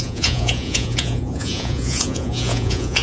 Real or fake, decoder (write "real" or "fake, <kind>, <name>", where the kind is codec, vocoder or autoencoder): fake, vocoder, Vocos